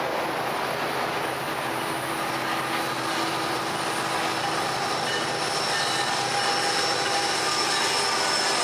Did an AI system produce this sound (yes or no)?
no